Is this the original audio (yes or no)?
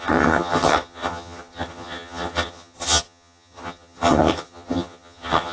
no